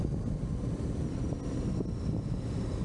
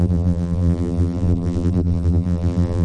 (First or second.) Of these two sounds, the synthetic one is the second